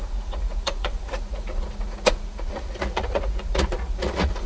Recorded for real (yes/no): no